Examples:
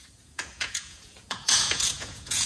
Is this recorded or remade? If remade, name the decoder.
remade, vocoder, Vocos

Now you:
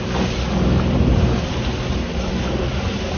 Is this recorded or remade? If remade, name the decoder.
recorded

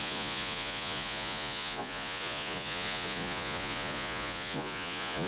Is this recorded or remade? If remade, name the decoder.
remade, vocoder, Vocos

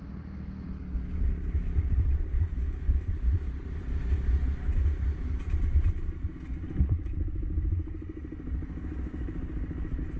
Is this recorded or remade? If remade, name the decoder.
recorded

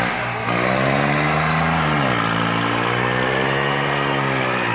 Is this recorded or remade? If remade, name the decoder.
recorded